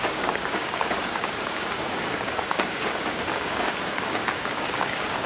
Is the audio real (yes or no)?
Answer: no